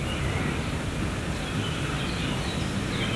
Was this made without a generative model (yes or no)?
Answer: no